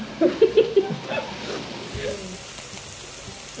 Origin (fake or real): real